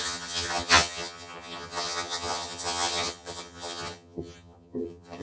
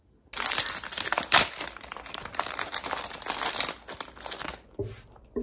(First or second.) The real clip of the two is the second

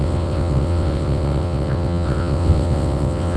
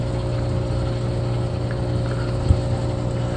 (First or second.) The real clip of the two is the second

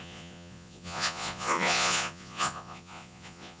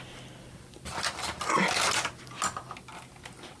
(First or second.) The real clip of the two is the second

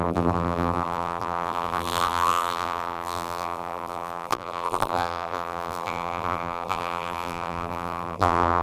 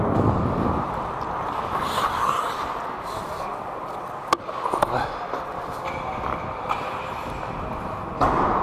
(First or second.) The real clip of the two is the second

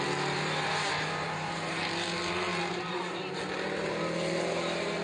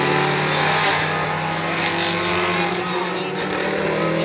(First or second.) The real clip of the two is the second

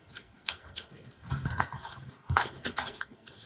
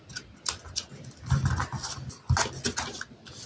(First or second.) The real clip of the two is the second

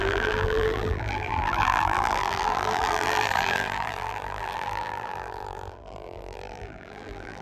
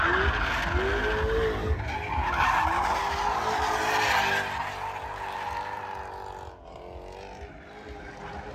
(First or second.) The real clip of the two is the second